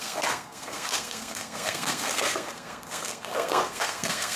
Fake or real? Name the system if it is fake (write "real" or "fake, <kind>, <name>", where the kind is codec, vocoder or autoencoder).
fake, codec, SNAC